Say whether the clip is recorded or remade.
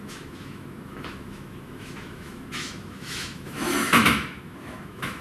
remade